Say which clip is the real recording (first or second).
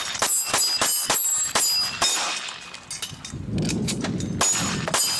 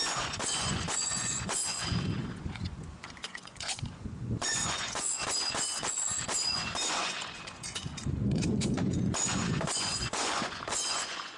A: first